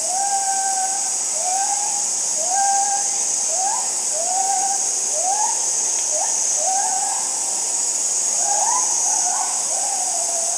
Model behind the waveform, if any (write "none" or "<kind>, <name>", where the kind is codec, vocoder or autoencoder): none